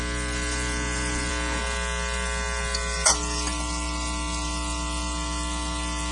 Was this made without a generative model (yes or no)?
yes